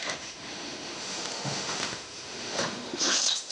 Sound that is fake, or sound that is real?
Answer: fake